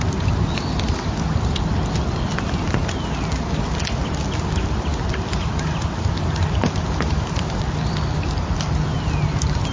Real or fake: real